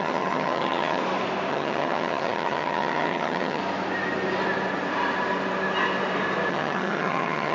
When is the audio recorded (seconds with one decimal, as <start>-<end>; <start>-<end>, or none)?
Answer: 1.0-1.5; 3.6-6.5